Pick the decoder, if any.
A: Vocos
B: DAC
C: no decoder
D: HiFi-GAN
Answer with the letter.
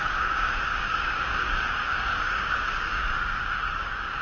B